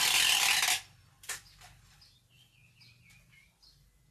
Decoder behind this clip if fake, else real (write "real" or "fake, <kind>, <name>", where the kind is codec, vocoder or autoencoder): real